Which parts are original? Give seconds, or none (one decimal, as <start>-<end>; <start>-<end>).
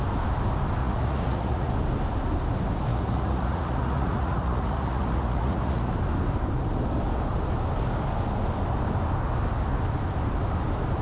0.0-0.8; 1.7-2.9; 5.9-11.0